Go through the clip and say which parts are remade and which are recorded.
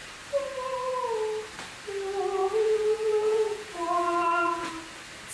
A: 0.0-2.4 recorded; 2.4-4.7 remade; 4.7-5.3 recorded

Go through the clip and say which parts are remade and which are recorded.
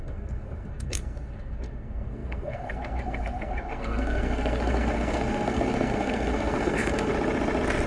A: 0.0-7.1 remade; 7.1-7.9 recorded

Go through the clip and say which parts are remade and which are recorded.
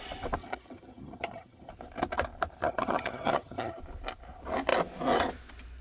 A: 0.0-0.4 recorded; 0.4-1.7 remade; 1.7-2.6 recorded; 2.6-3.8 remade; 3.8-5.8 recorded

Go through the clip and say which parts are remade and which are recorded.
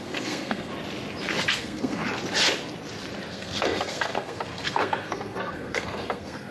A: 0.0-0.7 remade; 0.7-1.5 recorded; 1.5-2.0 remade; 2.0-3.3 recorded; 3.3-6.5 remade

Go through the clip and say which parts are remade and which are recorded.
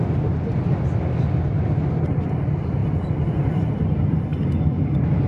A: 0.0-2.8 recorded; 2.8-3.7 remade; 3.7-5.3 recorded